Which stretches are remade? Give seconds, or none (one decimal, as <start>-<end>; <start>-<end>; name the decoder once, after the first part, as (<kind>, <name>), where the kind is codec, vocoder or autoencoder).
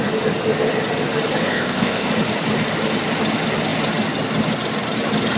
1.5-2.1 (codec, ZipCodec)